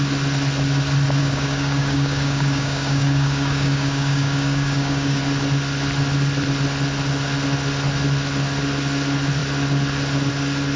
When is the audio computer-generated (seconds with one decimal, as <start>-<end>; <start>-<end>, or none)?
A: 1.2-5.2